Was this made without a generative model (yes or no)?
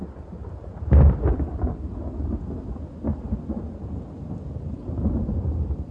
yes